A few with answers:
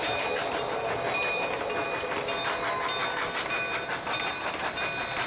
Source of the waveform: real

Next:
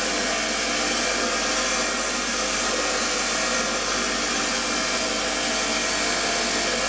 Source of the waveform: real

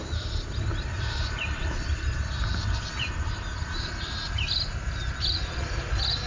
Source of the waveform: fake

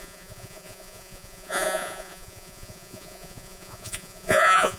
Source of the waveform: fake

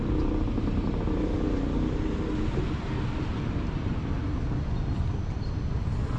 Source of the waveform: real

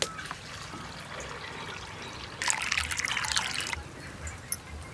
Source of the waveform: real